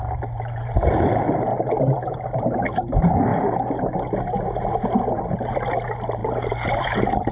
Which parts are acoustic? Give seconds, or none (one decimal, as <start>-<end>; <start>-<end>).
1.5-2.4; 3.3-5.1